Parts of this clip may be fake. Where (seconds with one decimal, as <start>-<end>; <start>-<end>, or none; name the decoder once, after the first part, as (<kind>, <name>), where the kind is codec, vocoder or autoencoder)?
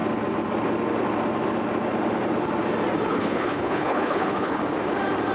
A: 3.1-4.6 (codec, HILCodec)